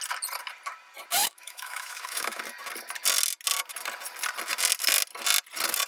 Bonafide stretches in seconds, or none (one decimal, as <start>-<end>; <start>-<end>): 0.0-1.2; 2.4-5.9